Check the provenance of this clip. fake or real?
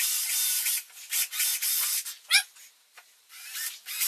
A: real